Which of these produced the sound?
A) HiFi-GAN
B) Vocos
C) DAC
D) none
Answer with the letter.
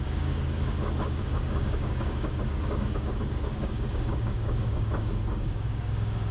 C